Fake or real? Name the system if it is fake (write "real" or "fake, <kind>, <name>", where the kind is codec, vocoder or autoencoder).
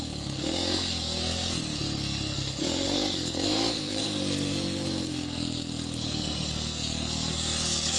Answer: fake, codec, SNAC